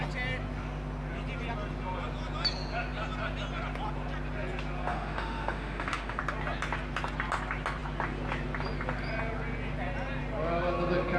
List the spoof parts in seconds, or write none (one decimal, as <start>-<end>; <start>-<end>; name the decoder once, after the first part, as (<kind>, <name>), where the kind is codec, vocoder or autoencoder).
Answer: 4.9-6.2 (autoencoder, DAC-VAE)